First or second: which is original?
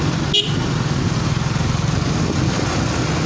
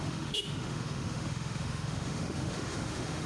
first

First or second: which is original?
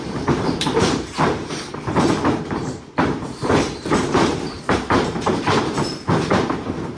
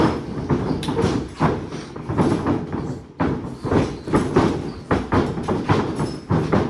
second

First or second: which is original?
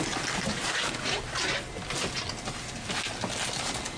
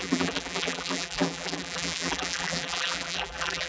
first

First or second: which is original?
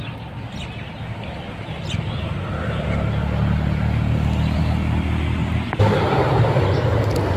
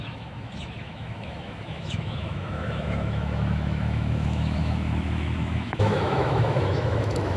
first